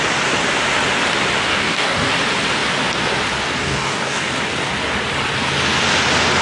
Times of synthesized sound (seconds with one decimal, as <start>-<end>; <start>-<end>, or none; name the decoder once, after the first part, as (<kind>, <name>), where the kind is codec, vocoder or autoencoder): 1.5-2.1 (codec, DAC); 3.6-4.3